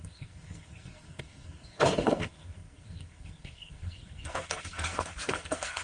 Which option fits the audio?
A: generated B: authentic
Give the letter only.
A